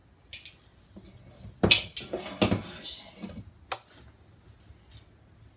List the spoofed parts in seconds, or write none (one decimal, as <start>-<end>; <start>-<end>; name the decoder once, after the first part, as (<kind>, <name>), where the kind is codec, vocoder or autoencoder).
none

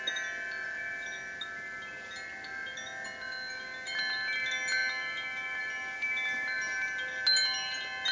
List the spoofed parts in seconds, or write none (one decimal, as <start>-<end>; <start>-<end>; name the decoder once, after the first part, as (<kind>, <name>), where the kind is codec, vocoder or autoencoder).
none

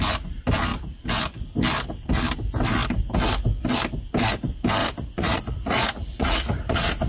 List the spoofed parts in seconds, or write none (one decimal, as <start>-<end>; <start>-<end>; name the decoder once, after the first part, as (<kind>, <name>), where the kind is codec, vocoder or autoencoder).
4.8-7.1 (vocoder, Vocos)

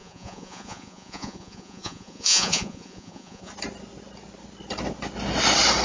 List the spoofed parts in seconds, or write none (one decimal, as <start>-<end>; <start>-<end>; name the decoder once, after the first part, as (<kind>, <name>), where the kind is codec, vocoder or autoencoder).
0.0-3.5 (vocoder, Vocos)

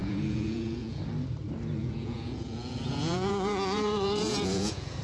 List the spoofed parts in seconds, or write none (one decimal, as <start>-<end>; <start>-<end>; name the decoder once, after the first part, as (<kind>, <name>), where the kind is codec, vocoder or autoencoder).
0.0-1.0 (vocoder, Vocos); 1.8-5.0

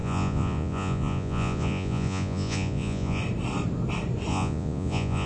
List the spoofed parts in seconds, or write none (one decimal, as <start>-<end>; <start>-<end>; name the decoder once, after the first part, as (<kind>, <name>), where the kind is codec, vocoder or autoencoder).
0.0-3.2 (vocoder, Vocos); 4.3-5.3